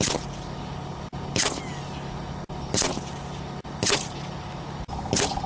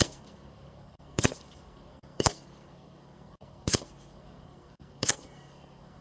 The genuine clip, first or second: first